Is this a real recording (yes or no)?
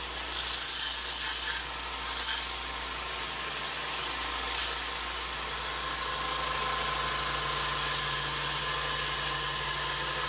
yes